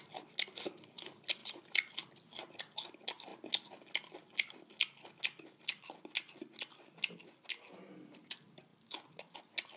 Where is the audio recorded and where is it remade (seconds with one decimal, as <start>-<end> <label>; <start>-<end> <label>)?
0.0-8.7 recorded; 8.7-9.4 remade; 9.4-9.8 recorded